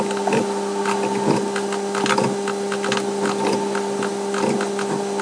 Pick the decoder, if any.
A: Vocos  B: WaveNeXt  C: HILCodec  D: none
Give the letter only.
D